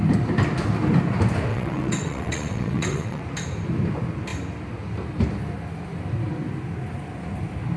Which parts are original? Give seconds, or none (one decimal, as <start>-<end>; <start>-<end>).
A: 0.0-1.5; 3.2-7.8